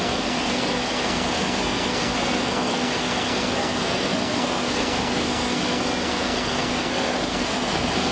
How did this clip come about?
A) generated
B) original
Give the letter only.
A